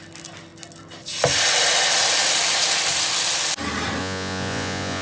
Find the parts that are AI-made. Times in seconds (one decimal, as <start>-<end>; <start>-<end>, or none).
4.0-5.0